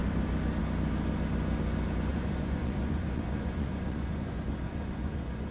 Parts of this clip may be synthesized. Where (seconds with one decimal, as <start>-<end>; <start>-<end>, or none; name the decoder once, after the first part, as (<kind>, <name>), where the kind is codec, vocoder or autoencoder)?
2.1-5.5 (vocoder, Vocos)